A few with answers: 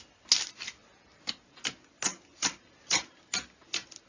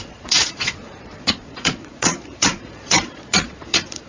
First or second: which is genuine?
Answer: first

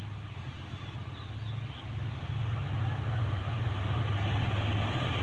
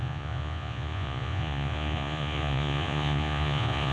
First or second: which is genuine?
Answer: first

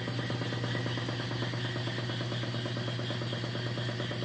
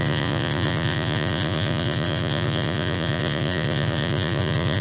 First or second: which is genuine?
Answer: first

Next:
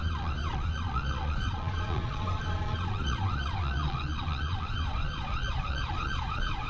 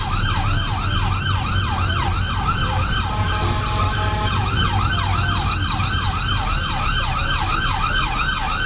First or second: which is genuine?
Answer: second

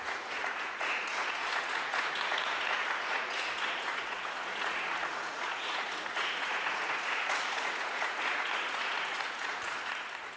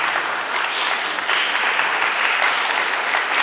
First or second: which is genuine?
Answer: second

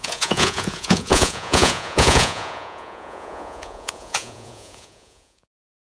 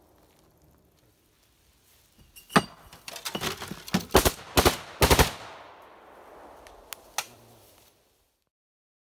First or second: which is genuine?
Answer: second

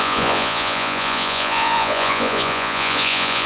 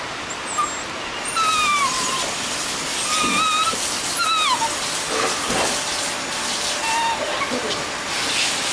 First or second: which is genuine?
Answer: second